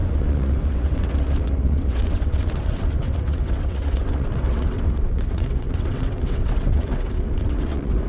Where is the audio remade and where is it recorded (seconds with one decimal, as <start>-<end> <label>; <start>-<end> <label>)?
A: 0.0-8.1 remade